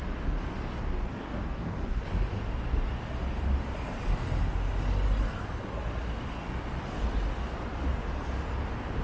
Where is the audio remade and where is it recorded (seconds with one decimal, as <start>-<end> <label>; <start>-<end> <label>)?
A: 0.0-1.1 recorded; 1.1-2.0 remade; 2.0-9.0 recorded